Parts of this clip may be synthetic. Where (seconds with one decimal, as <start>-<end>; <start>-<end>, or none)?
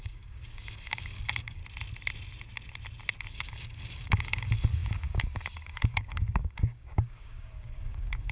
0.0-1.6; 3.3-8.3